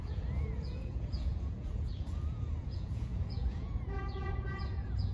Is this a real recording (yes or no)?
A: no